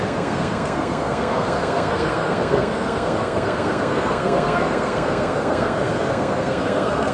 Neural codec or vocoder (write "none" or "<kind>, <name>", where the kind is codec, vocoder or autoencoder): codec, SNAC